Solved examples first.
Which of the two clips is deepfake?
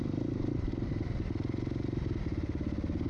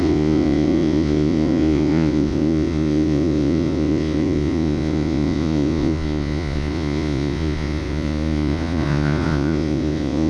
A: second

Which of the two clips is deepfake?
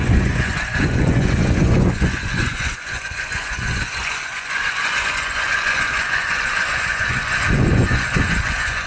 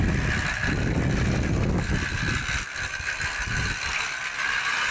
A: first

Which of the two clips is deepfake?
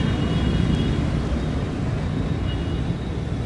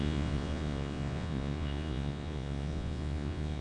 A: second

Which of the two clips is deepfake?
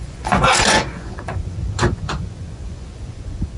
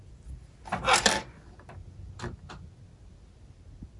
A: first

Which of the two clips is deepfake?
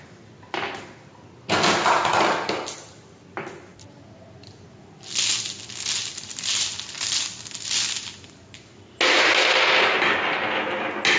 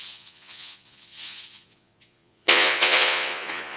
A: second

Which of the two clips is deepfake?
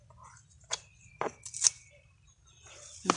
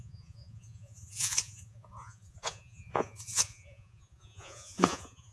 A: second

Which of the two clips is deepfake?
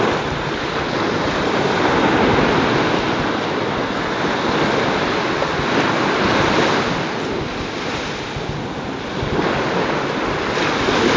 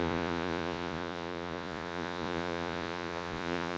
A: second